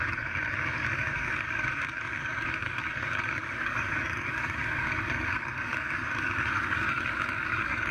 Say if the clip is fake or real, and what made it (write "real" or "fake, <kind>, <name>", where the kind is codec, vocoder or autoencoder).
fake, codec, DAC